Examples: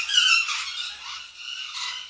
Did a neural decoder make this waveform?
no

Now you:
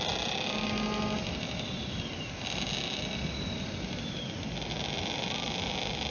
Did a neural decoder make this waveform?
no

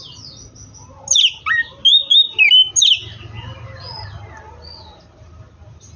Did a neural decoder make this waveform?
no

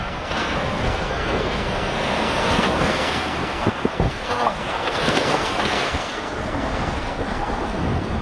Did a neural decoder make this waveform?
yes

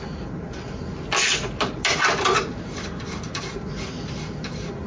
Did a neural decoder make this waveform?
no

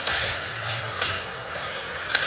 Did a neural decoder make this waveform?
yes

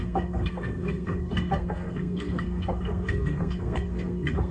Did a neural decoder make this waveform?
yes